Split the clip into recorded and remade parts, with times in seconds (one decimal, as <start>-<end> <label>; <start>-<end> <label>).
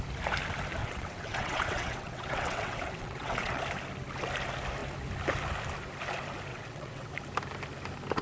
0.0-0.8 recorded; 0.8-3.6 remade; 3.6-6.5 recorded; 6.5-7.1 remade; 7.1-8.2 recorded